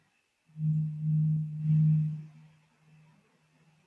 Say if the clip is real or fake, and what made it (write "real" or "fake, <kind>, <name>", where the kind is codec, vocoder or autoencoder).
real